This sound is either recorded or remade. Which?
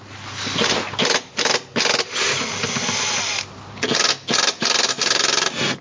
recorded